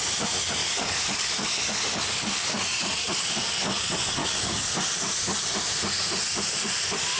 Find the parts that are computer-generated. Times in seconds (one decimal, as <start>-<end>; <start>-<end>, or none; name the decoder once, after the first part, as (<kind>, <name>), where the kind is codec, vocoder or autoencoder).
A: 0.6-3.8 (codec, DAC); 4.2-4.8